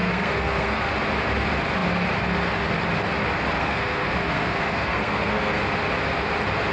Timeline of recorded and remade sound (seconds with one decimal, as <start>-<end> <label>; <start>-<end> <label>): 0.0-0.9 remade; 0.9-3.6 recorded; 3.6-5.6 remade; 5.6-6.7 recorded